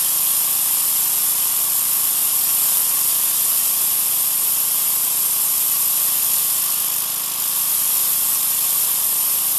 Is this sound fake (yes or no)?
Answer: no